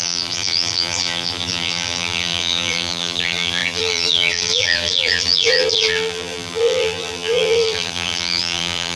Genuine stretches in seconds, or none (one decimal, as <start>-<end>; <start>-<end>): none